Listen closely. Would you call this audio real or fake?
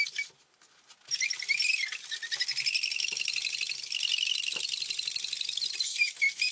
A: real